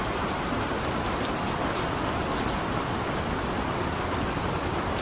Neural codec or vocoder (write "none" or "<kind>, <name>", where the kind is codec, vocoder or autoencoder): none